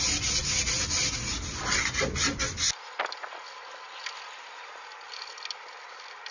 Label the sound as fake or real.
real